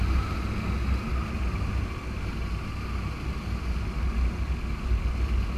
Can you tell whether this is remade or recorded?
recorded